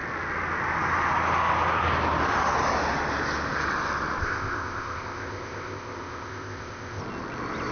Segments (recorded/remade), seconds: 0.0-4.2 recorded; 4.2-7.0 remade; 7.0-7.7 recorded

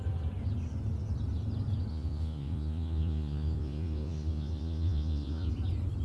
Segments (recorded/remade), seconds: 0.0-1.9 recorded; 1.9-5.5 remade; 5.5-6.0 recorded

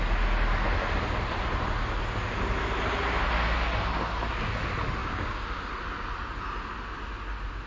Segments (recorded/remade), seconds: 0.0-5.0 recorded; 5.0-5.6 remade; 5.6-7.7 recorded

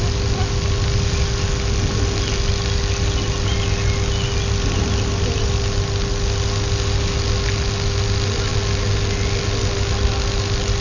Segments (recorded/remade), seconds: 0.0-10.8 recorded

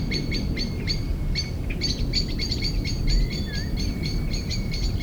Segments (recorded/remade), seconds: 0.0-1.1 remade; 1.1-3.7 recorded; 3.7-5.0 remade

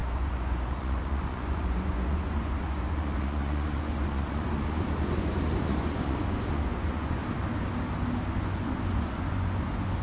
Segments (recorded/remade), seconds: 0.0-7.2 remade; 7.2-8.3 recorded; 8.3-10.0 remade

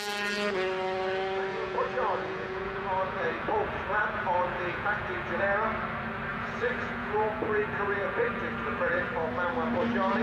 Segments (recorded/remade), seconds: 0.0-1.5 recorded; 1.5-5.4 remade; 5.4-6.3 recorded; 6.3-9.1 remade; 9.1-10.2 recorded

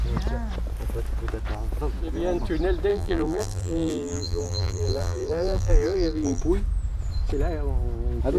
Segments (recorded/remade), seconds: 0.0-2.9 recorded; 2.9-6.4 remade; 6.4-8.4 recorded